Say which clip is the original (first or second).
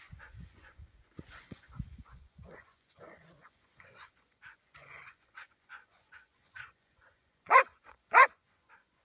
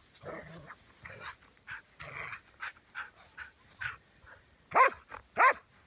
second